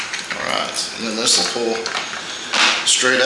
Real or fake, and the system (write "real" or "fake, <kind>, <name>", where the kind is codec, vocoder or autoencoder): real